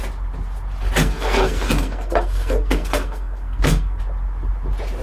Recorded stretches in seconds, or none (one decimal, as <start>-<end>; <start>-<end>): 0.0-1.0; 4.0-5.0